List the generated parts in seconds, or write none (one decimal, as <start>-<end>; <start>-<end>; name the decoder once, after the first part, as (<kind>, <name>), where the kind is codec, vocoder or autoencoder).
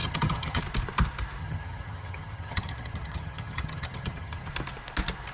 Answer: 0.0-0.6 (vocoder, HiFi-GAN); 1.4-4.5